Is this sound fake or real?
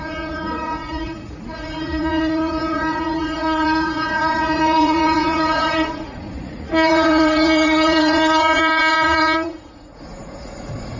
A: fake